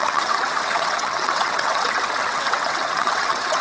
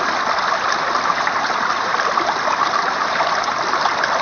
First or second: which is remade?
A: first